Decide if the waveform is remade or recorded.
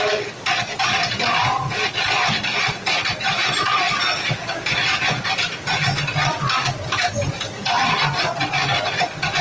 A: recorded